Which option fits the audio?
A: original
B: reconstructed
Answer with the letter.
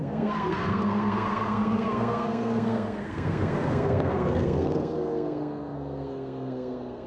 B